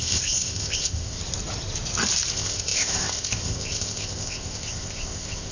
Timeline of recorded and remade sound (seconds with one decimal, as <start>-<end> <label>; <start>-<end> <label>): 0.0-1.2 remade; 1.2-2.3 recorded; 2.3-5.5 remade